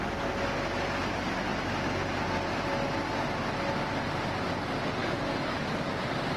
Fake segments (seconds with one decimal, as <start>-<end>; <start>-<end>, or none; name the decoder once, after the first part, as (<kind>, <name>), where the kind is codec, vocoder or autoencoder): 5.0-5.9 (codec, DAC)